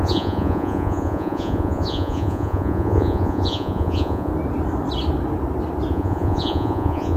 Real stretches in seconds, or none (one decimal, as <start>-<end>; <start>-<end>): 4.3-5.9